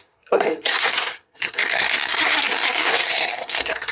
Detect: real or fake fake